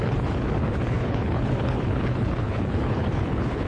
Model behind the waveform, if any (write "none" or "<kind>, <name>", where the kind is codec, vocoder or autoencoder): codec, HILCodec